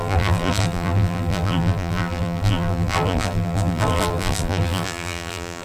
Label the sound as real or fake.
fake